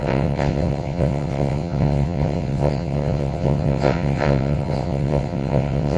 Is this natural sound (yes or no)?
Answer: no